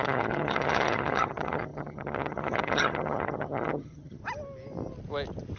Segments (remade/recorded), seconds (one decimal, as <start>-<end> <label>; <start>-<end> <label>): 0.0-4.2 remade; 4.2-5.6 recorded

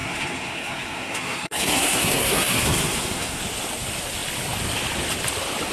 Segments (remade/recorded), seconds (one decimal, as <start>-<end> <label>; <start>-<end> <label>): 0.0-3.4 remade; 3.4-5.7 recorded